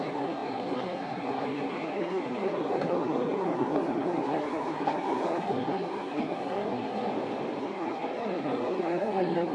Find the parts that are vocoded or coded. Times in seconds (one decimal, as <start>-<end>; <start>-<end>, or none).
0.0-7.1; 7.6-9.5